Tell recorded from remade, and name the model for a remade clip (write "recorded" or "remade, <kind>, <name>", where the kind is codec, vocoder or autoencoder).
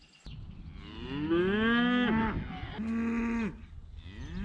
recorded